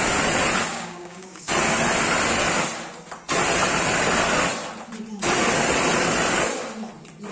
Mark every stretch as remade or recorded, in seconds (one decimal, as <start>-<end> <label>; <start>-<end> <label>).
0.0-0.7 recorded; 0.7-1.5 remade; 1.5-7.3 recorded